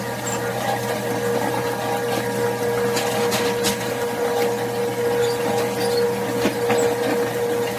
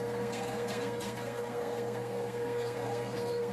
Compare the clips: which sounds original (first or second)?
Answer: first